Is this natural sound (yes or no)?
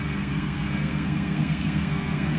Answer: no